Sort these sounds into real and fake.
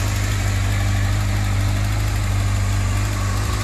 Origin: real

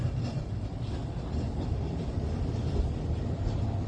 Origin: real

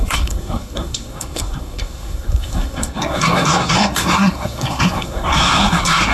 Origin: fake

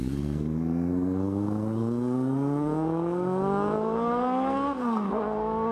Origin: fake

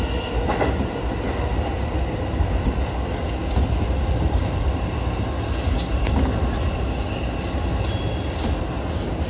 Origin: real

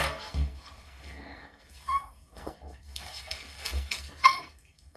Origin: fake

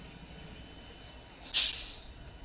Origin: real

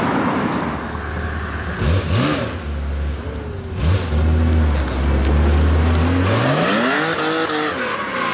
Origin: real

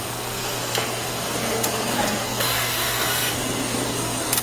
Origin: fake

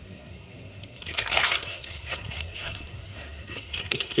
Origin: fake